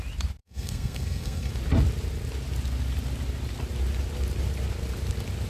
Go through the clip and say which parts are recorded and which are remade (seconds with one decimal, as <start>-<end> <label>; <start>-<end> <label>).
0.0-0.4 recorded; 0.4-1.5 remade; 1.5-5.5 recorded